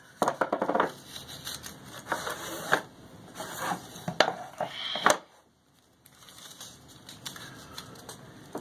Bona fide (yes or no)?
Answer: yes